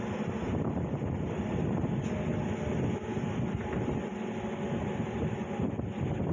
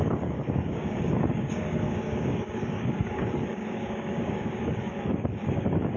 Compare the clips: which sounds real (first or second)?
first